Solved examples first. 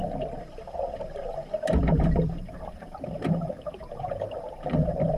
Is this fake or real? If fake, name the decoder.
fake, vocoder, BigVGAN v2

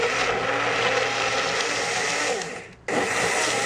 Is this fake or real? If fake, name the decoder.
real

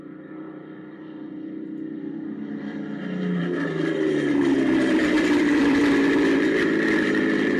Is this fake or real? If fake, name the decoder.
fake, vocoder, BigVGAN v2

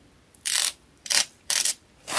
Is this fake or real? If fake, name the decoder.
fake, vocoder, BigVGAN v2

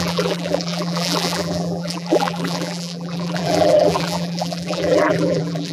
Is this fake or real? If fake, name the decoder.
fake, vocoder, BigVGAN v2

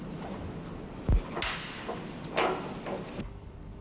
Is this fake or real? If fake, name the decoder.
real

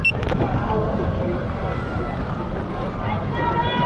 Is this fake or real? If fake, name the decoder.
fake, vocoder, BigVGAN v2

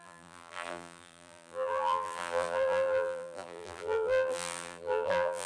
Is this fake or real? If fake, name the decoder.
fake, vocoder, BigVGAN v2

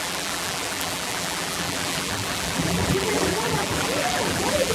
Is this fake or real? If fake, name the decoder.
fake, vocoder, BigVGAN v2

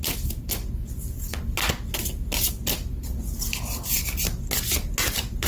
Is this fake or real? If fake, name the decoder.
real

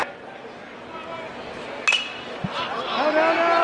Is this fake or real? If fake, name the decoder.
real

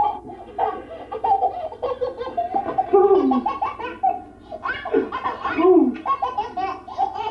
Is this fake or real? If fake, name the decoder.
real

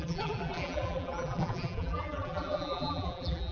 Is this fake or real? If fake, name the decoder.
fake, vocoder, BigVGAN v2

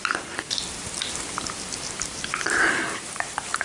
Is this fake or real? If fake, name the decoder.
fake, vocoder, BigVGAN v2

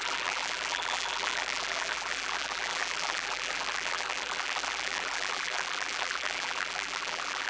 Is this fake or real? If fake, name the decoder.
fake, vocoder, BigVGAN v2